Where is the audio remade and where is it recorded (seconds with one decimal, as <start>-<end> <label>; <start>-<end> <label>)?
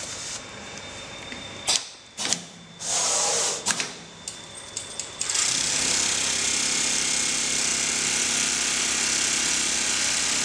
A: 0.0-10.4 recorded